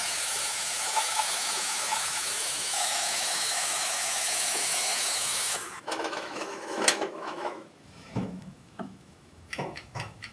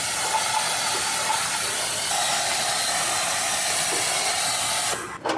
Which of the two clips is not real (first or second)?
first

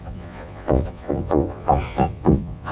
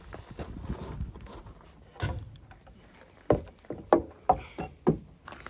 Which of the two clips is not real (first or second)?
first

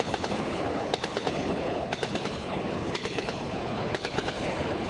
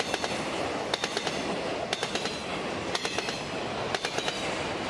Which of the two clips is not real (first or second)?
first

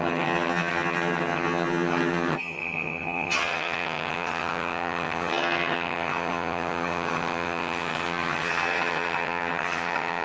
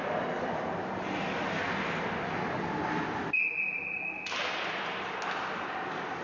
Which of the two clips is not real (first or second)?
first